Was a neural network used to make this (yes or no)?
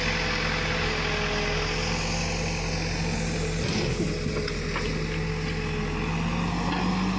no